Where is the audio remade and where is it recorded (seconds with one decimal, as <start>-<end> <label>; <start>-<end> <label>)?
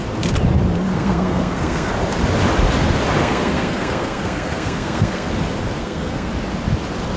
0.0-0.9 recorded; 0.9-1.9 remade; 1.9-3.2 recorded; 3.2-5.3 remade; 5.3-5.8 recorded; 5.8-6.3 remade; 6.3-7.2 recorded